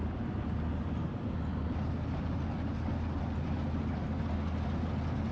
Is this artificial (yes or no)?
no